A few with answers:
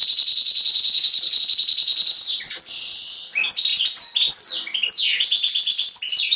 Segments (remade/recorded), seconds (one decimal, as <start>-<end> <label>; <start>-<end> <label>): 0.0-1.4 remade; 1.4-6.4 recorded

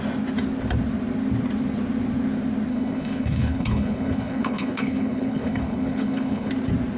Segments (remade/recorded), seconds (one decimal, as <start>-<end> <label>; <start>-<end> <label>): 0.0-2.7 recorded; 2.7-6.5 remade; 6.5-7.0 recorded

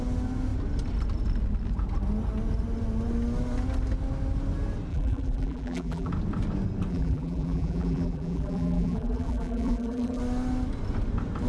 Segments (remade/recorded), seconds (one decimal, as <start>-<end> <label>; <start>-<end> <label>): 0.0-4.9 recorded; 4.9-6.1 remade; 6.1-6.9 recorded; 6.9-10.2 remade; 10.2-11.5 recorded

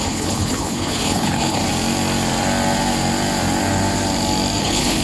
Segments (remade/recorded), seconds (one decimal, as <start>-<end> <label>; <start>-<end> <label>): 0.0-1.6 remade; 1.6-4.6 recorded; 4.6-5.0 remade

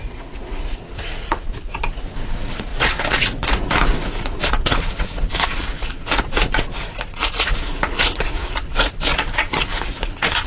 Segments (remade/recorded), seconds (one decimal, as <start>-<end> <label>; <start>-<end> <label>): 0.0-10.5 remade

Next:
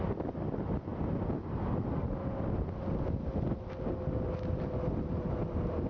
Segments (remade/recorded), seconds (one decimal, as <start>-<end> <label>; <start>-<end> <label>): 0.0-5.9 recorded